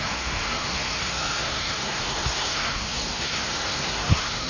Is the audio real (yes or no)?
no